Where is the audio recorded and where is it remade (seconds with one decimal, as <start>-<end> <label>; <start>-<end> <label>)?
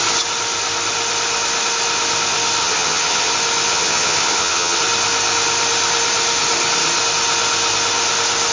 0.0-2.6 recorded; 2.6-3.3 remade; 3.3-3.7 recorded; 3.7-4.8 remade; 4.8-8.5 recorded